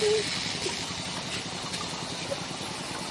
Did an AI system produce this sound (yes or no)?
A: no